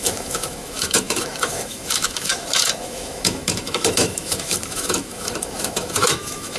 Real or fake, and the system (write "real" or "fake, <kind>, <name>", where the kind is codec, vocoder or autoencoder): fake, autoencoder, DAC-VAE